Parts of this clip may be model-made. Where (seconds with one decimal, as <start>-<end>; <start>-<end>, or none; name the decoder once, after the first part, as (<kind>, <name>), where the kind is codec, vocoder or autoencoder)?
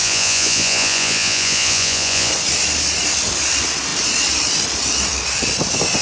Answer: 0.0-2.3 (vocoder, Vocos)